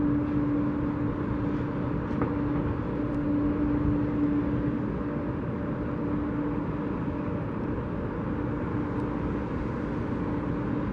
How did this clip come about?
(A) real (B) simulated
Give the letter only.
A